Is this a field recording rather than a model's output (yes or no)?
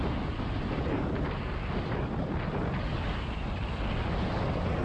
yes